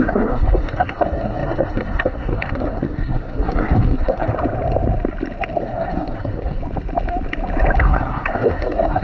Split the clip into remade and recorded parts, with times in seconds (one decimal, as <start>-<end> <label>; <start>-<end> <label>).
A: 0.0-4.3 remade; 4.3-5.6 recorded; 5.6-6.6 remade; 6.6-7.8 recorded; 7.8-9.0 remade